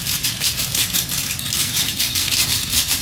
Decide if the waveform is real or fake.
fake